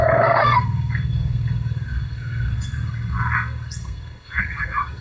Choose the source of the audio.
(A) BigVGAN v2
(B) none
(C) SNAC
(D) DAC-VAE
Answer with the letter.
C